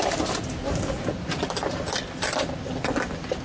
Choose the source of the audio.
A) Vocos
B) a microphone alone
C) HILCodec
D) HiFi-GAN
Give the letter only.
B